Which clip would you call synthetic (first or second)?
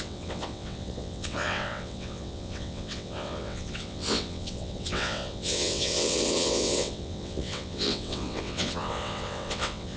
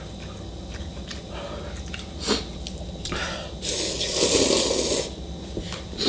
first